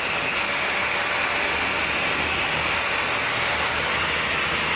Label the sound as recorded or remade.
recorded